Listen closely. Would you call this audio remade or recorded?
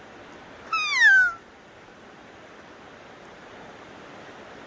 recorded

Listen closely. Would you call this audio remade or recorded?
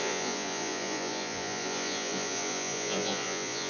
remade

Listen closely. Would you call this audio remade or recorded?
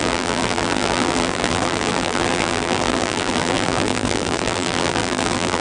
remade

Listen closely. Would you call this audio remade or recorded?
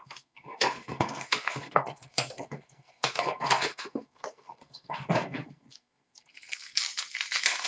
remade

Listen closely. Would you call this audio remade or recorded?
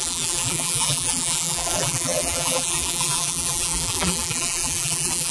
remade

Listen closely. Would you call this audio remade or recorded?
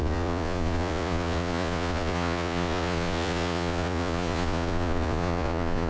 remade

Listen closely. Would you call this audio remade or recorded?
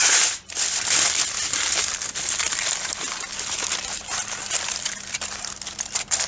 recorded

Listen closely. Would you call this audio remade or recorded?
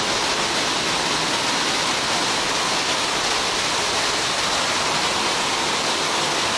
recorded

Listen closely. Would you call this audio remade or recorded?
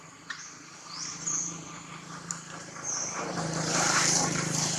remade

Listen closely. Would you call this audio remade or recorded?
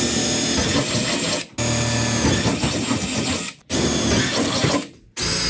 recorded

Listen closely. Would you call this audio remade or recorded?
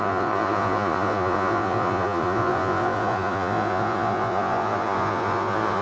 remade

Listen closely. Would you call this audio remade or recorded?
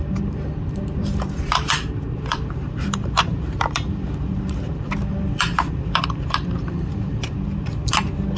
remade